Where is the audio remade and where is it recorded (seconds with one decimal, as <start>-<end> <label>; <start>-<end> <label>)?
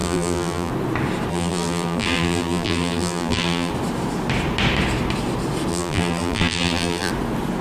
0.0-0.7 remade; 0.7-1.3 recorded; 1.3-3.7 remade; 3.7-5.7 recorded; 5.7-7.1 remade; 7.1-7.6 recorded